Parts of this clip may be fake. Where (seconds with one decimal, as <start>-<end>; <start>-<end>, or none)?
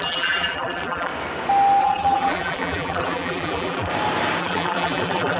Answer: 0.0-1.1; 1.8-3.9; 4.4-5.4